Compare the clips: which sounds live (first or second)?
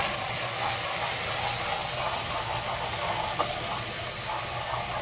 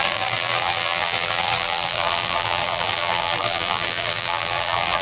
first